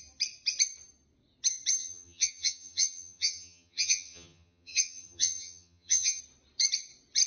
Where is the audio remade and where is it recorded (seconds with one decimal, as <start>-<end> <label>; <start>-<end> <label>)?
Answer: 0.0-1.8 recorded; 1.8-6.2 remade; 6.2-7.3 recorded

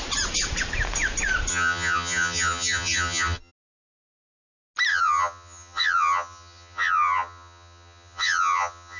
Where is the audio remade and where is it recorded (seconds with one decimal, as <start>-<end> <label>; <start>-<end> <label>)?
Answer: 0.0-1.5 recorded; 1.5-3.5 remade; 3.5-4.9 recorded; 4.9-9.0 remade

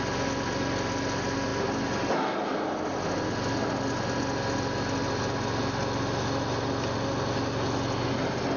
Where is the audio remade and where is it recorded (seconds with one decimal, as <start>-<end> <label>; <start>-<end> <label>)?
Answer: 0.0-8.6 recorded

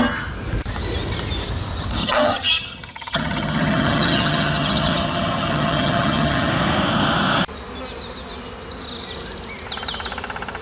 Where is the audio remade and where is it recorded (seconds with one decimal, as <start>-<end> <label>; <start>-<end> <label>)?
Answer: 0.0-2.0 recorded; 2.0-6.5 remade; 6.5-10.6 recorded

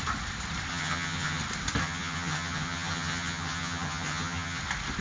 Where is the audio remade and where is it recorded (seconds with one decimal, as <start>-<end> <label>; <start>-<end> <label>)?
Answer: 0.0-0.7 recorded; 0.7-1.4 remade; 1.4-1.8 recorded; 1.8-4.6 remade; 4.6-5.0 recorded

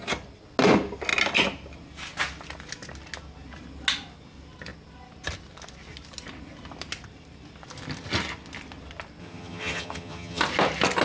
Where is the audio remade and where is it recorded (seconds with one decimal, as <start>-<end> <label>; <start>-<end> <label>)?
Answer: 0.0-9.2 recorded; 9.2-10.4 remade; 10.4-11.0 recorded

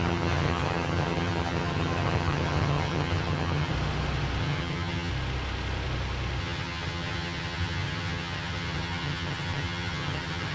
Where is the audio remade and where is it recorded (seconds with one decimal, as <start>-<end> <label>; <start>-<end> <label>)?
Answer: 0.0-3.7 remade; 3.7-4.4 recorded; 4.4-5.1 remade; 5.1-6.4 recorded; 6.4-10.5 remade